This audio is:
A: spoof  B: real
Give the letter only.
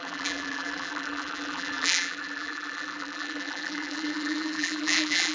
A